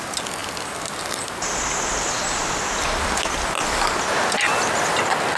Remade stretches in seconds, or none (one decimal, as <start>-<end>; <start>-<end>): none